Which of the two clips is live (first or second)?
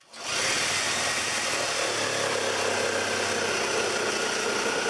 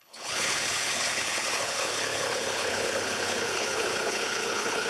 first